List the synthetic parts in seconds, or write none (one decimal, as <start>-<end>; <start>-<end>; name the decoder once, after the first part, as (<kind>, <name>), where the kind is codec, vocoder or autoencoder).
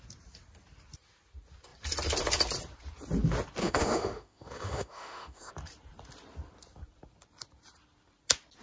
3.6-5.5 (autoencoder, DAC-VAE)